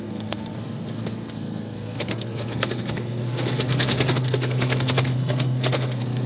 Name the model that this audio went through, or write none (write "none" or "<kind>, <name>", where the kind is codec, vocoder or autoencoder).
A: codec, SNAC